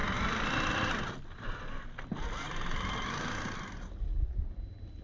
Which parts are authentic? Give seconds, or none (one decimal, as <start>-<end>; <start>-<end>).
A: 0.0-5.0